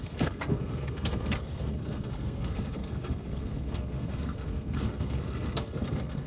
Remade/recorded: remade